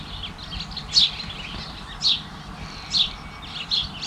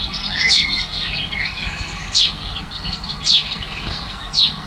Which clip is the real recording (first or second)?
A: first